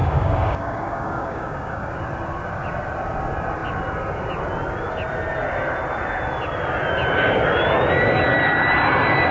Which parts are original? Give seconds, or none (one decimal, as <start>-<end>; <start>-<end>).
1.9-9.3